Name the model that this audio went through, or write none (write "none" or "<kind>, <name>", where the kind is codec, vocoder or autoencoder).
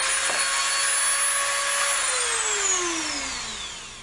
none